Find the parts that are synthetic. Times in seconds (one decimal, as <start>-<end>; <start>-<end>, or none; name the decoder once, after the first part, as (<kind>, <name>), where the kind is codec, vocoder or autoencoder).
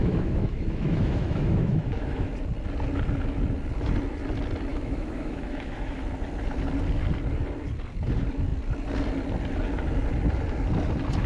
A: 0.0-2.3 (autoencoder, DAC-VAE); 4.7-6.0